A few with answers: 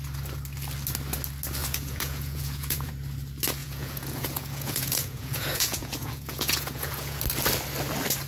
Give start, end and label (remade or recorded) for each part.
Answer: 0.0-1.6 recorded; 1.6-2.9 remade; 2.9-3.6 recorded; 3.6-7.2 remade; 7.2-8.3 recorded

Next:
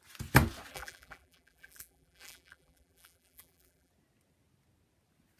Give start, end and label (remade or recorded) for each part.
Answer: 0.0-0.7 recorded; 0.7-3.9 remade; 3.9-5.4 recorded

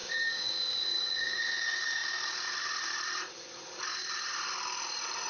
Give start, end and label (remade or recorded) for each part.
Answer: 0.0-0.5 remade; 0.5-0.9 recorded; 0.9-1.4 remade; 1.4-5.3 recorded

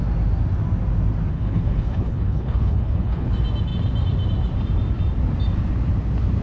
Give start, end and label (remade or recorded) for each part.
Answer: 0.0-1.3 recorded; 1.3-3.3 remade; 3.3-6.4 recorded

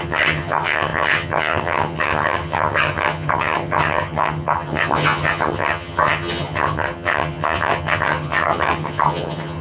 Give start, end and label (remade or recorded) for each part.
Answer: 0.0-9.6 remade

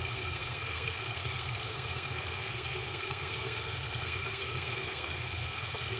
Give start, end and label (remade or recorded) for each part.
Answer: 0.0-6.0 remade

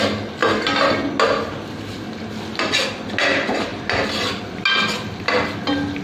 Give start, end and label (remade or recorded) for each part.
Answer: 0.0-6.0 recorded

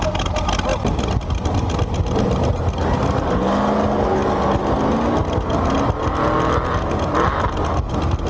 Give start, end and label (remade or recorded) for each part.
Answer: 0.0-8.3 recorded